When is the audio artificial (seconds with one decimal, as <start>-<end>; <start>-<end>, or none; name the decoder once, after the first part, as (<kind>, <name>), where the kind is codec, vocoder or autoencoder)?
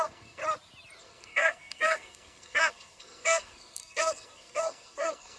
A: 0.0-0.4 (codec, SNAC); 1.0-5.4